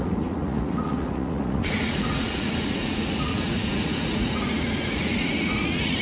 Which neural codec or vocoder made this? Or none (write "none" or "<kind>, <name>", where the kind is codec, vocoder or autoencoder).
vocoder, Vocos